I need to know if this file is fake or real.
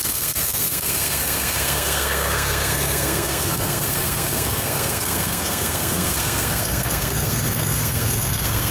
fake